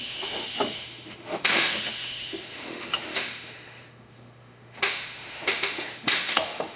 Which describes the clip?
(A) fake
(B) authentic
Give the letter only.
A